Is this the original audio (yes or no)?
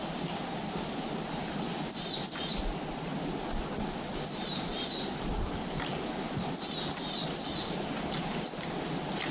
yes